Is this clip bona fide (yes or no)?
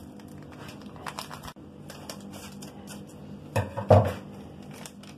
yes